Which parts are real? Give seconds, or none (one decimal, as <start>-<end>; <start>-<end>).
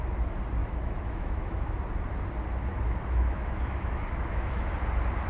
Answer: 0.0-0.6; 1.8-2.7; 4.7-5.3